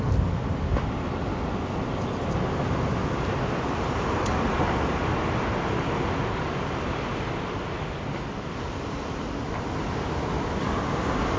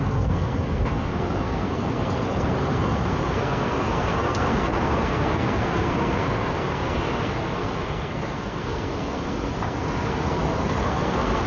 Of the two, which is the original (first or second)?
first